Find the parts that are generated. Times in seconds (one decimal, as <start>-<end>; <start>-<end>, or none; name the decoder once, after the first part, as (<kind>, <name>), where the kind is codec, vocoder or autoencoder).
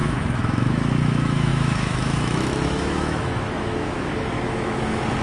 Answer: 0.0-5.2 (autoencoder, DAC-VAE)